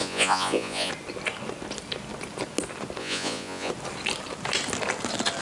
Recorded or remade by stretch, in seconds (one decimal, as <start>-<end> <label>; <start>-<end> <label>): 0.0-0.9 remade; 0.9-3.0 recorded; 3.0-3.7 remade; 3.7-5.4 recorded